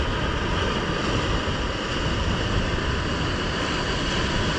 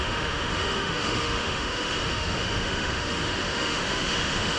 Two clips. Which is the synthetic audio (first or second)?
second